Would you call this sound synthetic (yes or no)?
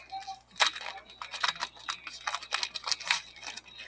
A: no